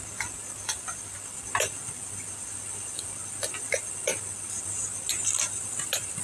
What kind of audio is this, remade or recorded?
recorded